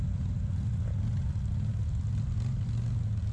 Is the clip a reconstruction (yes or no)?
no